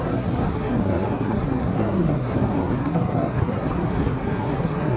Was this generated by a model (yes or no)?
yes